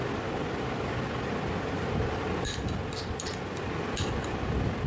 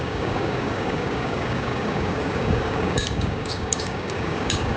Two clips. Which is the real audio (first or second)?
first